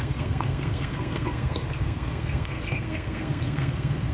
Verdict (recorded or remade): remade